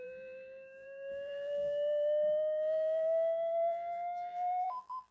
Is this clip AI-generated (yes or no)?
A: yes